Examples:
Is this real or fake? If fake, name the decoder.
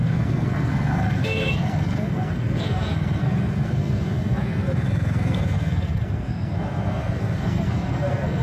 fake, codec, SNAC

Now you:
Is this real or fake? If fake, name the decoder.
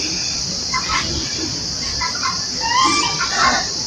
real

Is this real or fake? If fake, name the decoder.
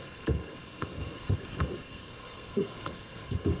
fake, codec, SNAC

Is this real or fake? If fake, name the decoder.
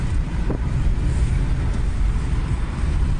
real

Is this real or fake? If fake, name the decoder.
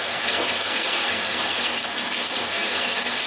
fake, codec, SNAC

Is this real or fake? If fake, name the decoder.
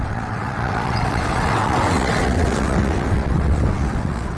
fake, vocoder, WaveNeXt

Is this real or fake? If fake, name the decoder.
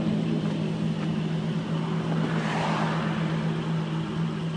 real